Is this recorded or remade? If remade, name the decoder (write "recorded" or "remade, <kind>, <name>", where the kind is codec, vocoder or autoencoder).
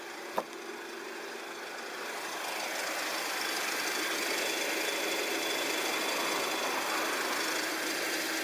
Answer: recorded